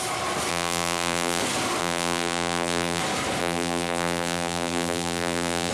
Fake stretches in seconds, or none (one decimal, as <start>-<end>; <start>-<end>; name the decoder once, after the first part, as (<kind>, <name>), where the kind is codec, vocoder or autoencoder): 0.5-1.4 (vocoder, BigVGAN v2); 1.8-3.0; 3.4-5.7